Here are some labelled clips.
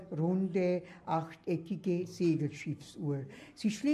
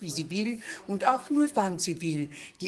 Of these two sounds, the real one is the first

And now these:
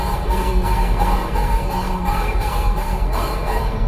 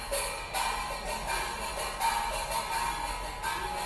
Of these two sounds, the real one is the second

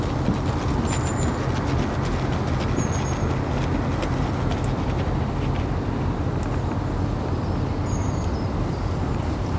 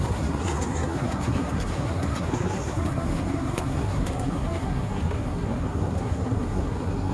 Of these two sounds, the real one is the first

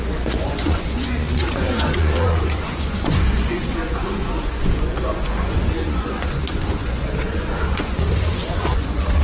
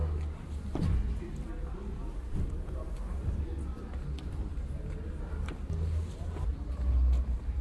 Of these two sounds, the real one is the second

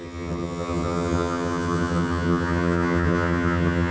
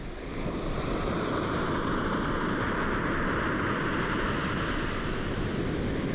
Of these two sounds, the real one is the second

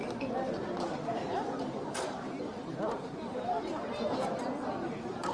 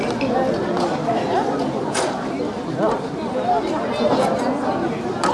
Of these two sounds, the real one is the second